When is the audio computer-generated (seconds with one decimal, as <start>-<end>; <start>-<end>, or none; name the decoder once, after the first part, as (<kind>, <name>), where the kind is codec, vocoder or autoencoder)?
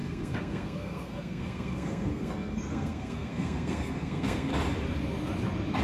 0.0-4.5 (codec, SNAC)